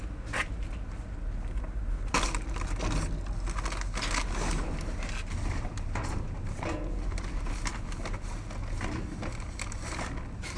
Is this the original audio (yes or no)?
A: yes